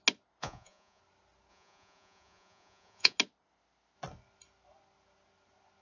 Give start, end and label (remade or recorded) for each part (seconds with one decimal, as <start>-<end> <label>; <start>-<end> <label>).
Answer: 0.0-0.4 recorded; 0.4-1.0 remade; 1.0-1.5 recorded; 1.5-3.2 remade; 3.2-5.8 recorded